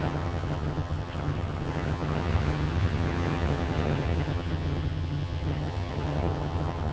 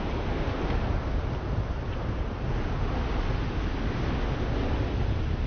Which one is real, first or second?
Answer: second